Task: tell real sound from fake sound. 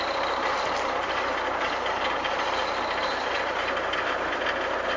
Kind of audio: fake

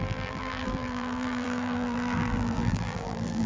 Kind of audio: fake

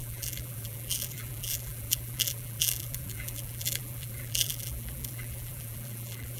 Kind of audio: fake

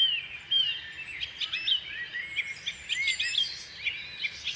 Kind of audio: real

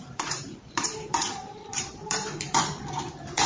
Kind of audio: fake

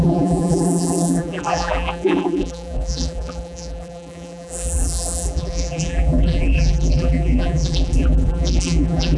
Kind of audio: fake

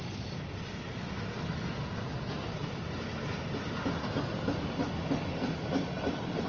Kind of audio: real